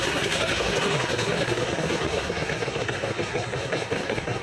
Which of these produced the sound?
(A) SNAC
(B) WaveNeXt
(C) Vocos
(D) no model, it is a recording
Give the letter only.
A